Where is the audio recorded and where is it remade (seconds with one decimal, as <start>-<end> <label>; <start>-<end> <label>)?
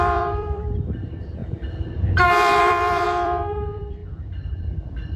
0.0-5.2 remade